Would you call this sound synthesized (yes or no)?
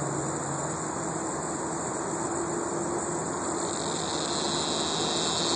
no